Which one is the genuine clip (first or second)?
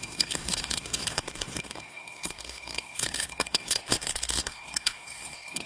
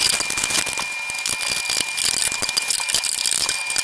second